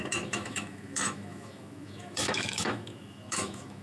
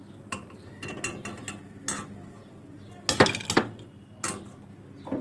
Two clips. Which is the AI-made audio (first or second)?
first